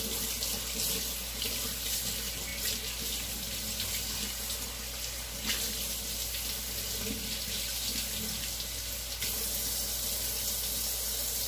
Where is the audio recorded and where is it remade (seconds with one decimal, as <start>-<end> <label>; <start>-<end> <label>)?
0.0-11.5 recorded